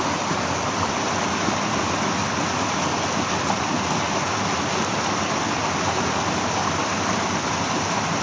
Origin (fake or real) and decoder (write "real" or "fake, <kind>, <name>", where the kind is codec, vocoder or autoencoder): real